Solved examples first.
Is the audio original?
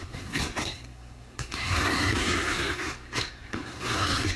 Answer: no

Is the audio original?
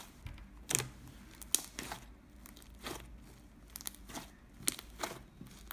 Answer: yes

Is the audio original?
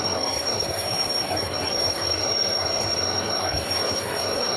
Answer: no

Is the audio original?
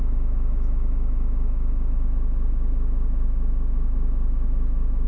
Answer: yes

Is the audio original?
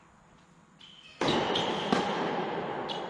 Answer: yes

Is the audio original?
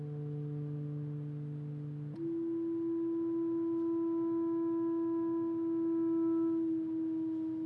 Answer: yes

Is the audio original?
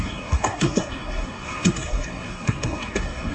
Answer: no